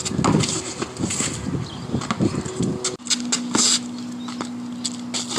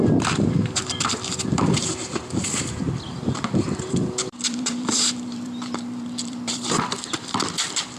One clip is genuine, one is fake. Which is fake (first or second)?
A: second